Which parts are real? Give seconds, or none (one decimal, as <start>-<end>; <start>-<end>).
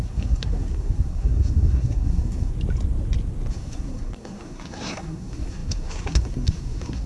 2.5-3.5